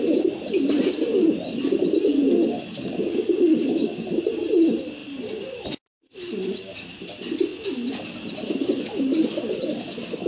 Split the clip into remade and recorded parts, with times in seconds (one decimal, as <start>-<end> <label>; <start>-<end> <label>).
0.0-10.3 recorded